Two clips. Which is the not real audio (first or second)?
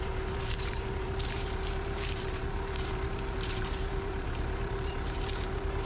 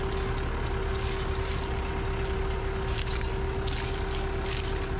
first